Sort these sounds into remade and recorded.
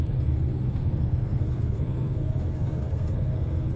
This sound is remade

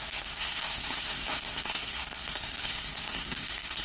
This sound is remade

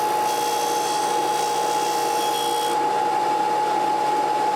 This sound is recorded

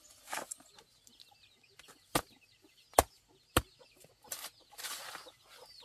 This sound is recorded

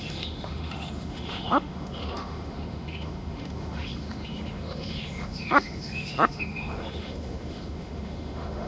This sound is remade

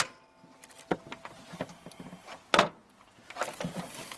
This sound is recorded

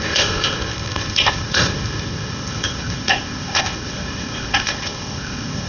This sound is remade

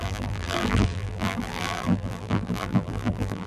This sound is remade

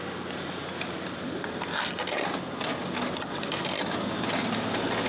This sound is recorded